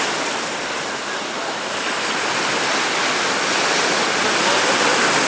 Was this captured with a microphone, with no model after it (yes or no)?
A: yes